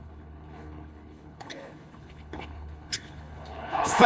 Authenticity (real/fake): fake